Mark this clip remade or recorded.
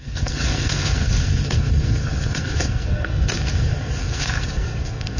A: remade